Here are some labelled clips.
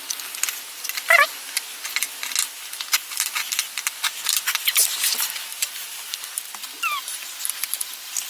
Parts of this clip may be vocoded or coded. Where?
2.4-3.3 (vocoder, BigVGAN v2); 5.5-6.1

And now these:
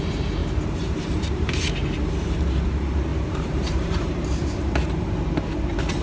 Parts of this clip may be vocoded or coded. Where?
0.4-1.6 (vocoder, BigVGAN v2); 3.1-5.6

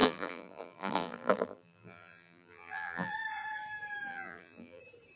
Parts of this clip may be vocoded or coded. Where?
0.0-3.1 (vocoder, BigVGAN v2); 4.1-4.8

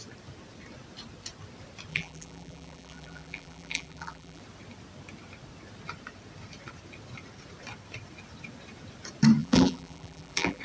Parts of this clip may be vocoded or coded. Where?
1.9-4.4 (vocoder, BigVGAN v2); 9.4-10.6

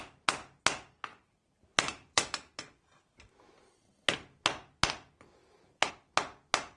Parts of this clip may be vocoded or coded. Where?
1.1-2.8 (vocoder, BigVGAN v2); 5.4-5.9